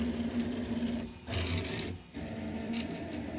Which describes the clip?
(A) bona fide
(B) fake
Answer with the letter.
A